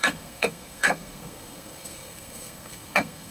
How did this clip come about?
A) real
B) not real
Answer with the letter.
B